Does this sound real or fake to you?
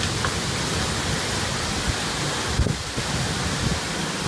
real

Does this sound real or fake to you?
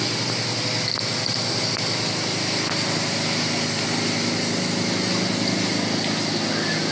real